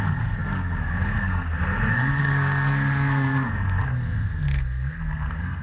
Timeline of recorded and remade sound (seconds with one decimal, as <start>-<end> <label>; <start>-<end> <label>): 0.0-5.6 remade